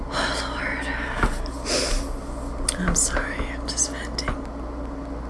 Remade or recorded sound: recorded